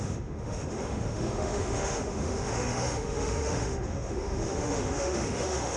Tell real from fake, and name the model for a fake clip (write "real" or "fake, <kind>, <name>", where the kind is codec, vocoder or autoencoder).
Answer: fake, autoencoder, DAC-VAE